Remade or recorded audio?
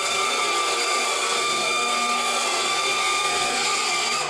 remade